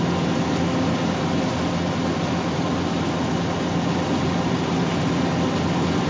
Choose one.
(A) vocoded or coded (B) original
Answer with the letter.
B